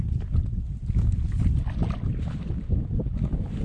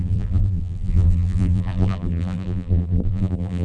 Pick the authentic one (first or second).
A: first